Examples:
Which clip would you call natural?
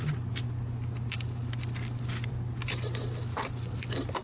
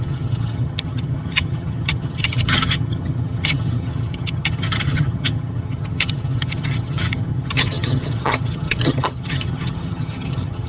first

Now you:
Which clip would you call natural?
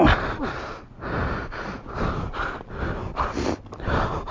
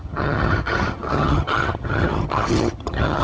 first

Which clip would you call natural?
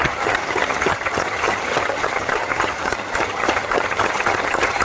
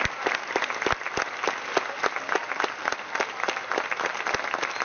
second